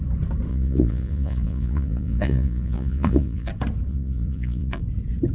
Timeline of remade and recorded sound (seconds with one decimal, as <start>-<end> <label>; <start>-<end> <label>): 0.0-0.5 recorded; 0.5-3.5 remade; 3.5-3.9 recorded; 3.9-4.8 remade; 4.8-5.3 recorded